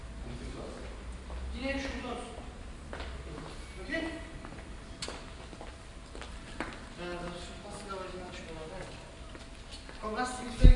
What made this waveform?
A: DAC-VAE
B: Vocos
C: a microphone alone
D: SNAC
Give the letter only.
C